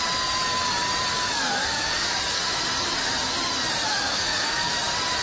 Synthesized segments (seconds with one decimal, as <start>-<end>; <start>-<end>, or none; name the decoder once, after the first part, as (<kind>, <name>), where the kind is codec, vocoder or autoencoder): 1.1-2.4 (codec, DAC); 3.9-4.7